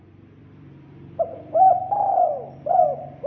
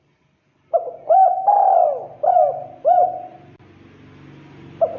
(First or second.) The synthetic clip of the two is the first